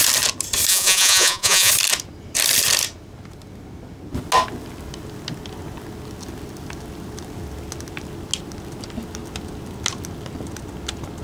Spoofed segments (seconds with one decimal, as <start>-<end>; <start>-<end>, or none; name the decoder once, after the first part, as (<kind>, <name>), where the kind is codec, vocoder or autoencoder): 0.7-1.7 (vocoder, Vocos)